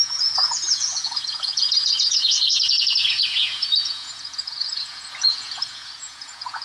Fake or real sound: fake